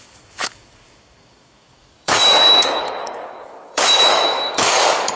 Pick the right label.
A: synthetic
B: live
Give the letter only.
A